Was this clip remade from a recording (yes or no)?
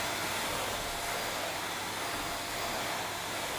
no